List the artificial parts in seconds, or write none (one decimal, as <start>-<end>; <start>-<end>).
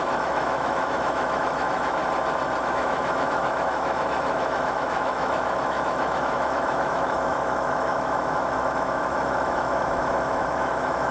0.0-2.0; 2.6-11.1